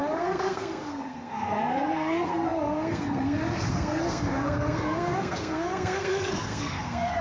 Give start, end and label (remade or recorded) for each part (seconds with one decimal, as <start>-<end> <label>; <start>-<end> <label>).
0.0-7.2 remade